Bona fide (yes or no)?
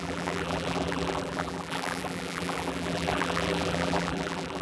no